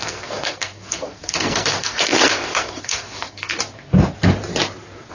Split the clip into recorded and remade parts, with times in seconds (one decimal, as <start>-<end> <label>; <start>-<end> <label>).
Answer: 0.0-3.5 remade; 3.5-5.1 recorded